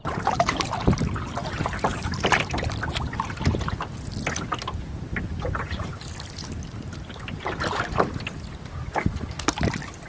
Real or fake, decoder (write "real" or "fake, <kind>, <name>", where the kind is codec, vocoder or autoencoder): real